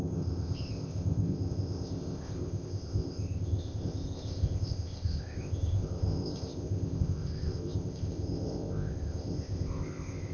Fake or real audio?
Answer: fake